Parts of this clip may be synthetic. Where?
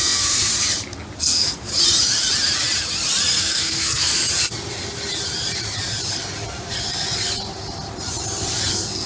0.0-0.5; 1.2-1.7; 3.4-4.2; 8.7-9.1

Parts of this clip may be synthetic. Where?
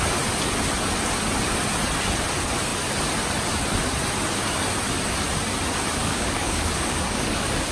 6.0-7.7